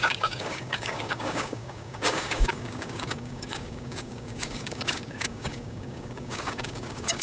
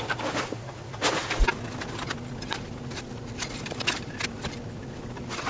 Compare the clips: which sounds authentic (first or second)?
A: second